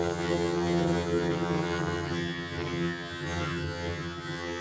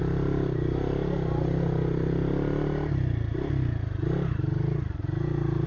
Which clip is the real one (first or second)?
second